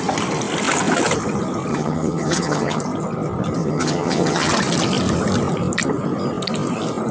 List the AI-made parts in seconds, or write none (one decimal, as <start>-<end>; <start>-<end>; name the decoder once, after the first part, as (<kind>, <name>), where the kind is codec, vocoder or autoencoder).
1.7-2.8 (vocoder, HiFi-GAN); 3.6-4.5